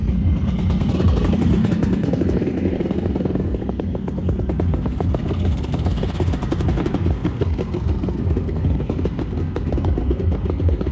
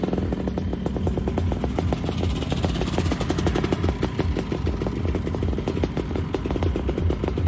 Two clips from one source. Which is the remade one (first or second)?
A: first